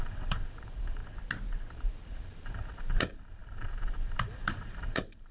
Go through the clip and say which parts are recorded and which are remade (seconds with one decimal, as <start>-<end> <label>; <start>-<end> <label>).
0.0-1.0 remade; 1.0-1.7 recorded; 1.7-5.3 remade